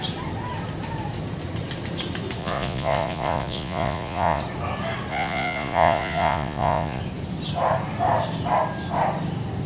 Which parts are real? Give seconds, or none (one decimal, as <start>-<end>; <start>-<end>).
0.0-2.4; 4.4-5.1; 7.0-9.7